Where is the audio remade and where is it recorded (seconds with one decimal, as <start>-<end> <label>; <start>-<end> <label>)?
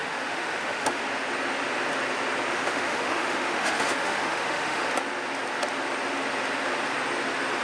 0.0-1.0 remade; 1.0-2.5 recorded; 2.5-4.9 remade; 4.9-7.6 recorded